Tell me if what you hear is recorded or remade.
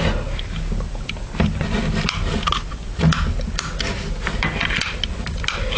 recorded